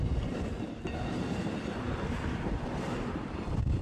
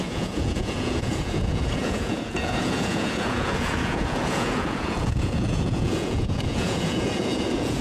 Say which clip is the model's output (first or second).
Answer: second